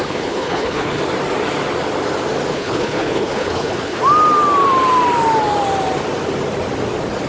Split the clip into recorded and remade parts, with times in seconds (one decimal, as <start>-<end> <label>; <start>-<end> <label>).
0.0-1.0 remade; 1.0-2.5 recorded; 2.5-4.0 remade; 4.0-7.3 recorded